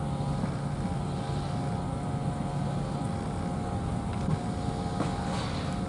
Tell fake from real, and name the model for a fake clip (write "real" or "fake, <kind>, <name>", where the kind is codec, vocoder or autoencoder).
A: real